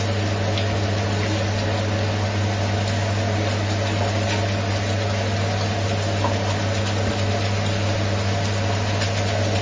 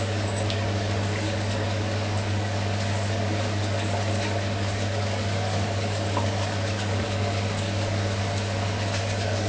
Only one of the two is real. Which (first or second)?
first